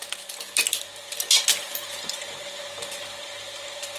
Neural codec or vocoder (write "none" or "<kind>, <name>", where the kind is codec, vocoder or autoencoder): none